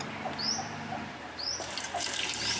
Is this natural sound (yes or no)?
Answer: no